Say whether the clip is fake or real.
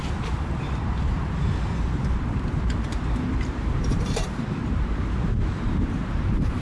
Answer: fake